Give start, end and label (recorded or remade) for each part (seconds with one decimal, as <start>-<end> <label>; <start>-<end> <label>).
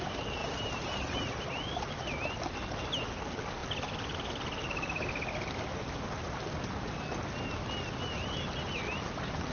0.0-9.5 recorded